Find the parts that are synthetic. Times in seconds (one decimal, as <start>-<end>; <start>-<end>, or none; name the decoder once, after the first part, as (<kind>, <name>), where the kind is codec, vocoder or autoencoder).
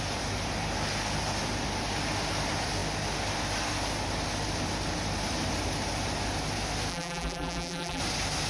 6.9-8.0 (vocoder, BigVGAN v2)